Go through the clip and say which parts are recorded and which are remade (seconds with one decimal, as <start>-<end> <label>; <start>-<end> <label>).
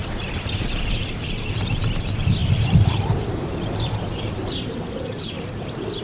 0.0-6.0 remade